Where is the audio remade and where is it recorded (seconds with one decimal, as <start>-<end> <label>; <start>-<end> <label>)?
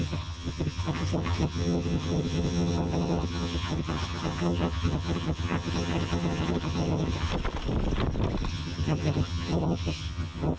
0.0-7.3 remade; 7.3-8.5 recorded; 8.5-10.6 remade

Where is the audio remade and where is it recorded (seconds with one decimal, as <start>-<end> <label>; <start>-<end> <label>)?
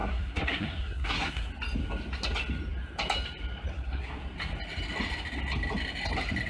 0.0-1.5 remade; 1.5-3.7 recorded; 3.7-4.2 remade; 4.2-6.5 recorded